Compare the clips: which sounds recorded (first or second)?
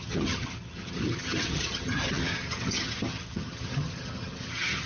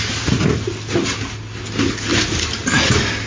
second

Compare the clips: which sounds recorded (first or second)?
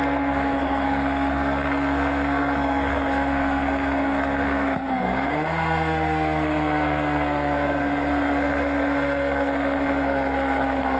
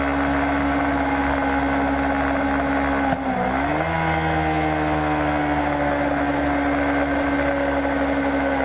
second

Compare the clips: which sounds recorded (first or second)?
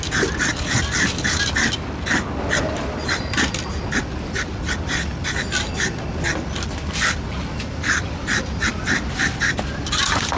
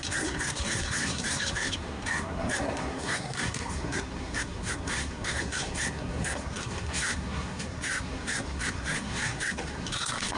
first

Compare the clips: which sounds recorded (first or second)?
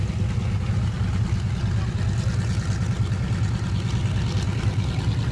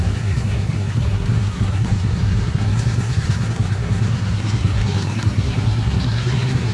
first